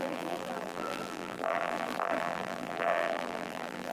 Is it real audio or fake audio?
fake